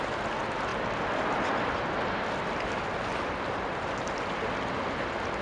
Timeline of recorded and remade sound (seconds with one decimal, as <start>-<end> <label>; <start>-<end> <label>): 0.0-5.4 recorded